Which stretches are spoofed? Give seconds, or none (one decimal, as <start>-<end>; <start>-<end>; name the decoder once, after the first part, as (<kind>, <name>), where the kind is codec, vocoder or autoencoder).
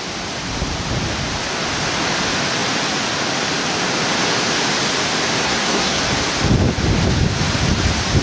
5.4-6.0 (codec, SNAC)